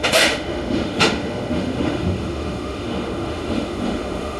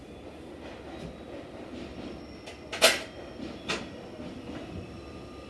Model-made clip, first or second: first